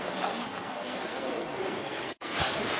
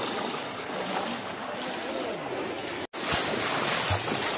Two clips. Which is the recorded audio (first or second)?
second